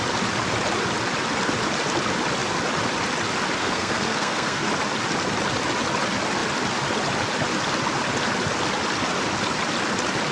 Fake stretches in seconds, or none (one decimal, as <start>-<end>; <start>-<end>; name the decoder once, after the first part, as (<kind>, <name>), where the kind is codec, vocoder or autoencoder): 3.6-4.7 (codec, SNAC)